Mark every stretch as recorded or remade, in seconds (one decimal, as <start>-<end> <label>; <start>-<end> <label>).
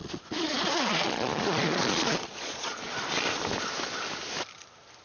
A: 0.0-3.0 remade; 3.0-5.0 recorded